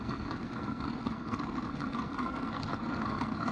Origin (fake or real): fake